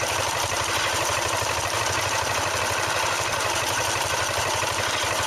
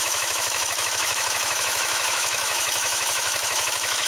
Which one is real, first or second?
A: first